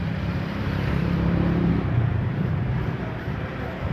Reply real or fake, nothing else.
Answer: fake